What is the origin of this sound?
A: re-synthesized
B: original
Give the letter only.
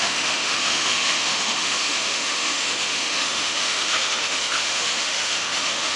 A